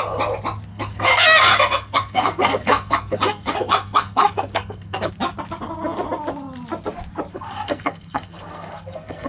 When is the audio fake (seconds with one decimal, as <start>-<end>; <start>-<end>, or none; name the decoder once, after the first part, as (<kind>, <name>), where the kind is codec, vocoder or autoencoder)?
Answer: 0.7-5.1 (codec, SNAC); 7.3-9.3